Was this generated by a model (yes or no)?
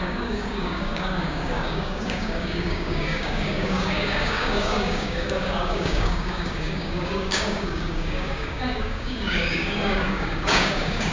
yes